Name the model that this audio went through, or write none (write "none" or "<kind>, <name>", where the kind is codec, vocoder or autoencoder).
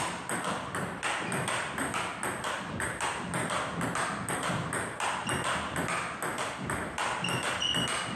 none